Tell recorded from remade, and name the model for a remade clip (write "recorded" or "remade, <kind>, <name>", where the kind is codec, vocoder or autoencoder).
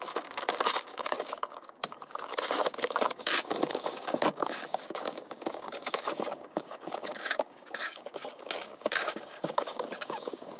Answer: remade, codec, DAC